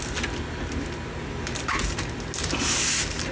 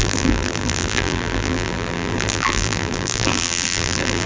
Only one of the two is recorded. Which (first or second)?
first